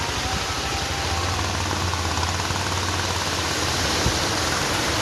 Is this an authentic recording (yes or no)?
yes